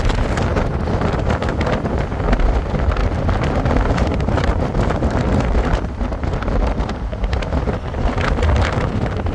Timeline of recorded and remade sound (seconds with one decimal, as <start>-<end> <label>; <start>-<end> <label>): 0.0-3.0 recorded; 3.0-7.1 remade; 7.1-9.3 recorded